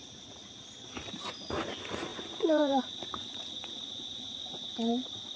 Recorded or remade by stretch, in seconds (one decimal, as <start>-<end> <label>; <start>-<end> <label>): 0.0-0.4 remade; 0.4-1.3 recorded; 1.3-5.4 remade